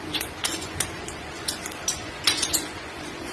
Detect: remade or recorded remade